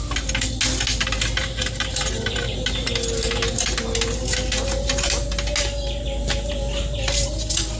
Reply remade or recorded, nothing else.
recorded